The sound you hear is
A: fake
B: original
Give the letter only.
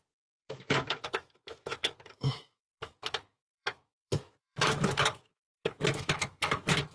A